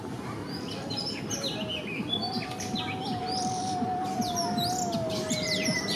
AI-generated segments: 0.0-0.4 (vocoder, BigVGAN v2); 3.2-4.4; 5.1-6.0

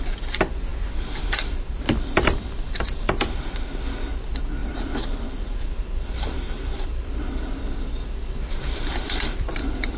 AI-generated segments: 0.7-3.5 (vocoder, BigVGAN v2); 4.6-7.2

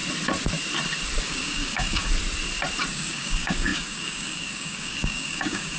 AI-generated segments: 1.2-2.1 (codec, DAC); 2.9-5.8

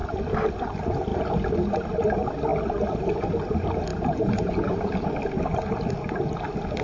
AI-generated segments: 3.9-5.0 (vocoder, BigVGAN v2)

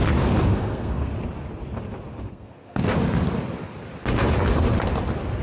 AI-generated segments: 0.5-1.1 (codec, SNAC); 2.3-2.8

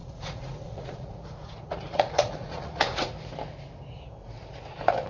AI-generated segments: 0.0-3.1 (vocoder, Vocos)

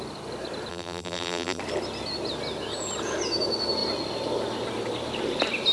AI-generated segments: 0.7-1.6 (vocoder, BigVGAN v2)